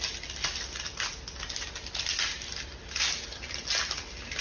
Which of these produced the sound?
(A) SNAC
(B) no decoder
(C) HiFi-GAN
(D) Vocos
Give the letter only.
B